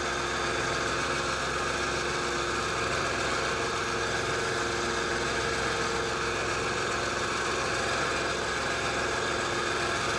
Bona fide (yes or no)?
yes